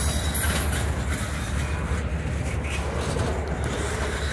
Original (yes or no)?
yes